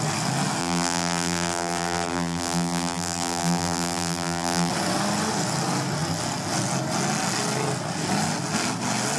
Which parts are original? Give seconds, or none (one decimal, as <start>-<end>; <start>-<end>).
0.0-0.6; 4.7-9.2